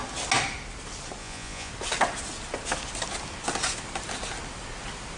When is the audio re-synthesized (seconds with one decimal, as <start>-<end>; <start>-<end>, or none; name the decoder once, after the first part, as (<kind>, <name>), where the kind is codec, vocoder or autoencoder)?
1.2-1.7 (vocoder, Vocos)